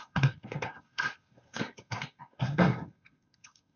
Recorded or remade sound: remade